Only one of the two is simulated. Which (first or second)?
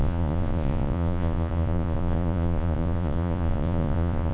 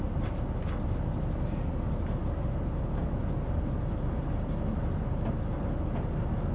first